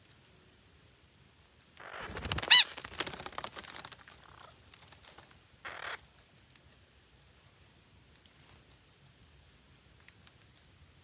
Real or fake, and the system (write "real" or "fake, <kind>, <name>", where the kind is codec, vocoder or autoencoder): real